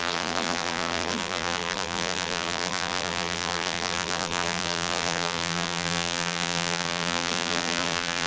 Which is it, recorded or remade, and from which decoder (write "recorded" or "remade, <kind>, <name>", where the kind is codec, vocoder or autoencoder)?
remade, vocoder, BigVGAN v2